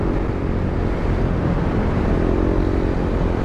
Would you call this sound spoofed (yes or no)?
no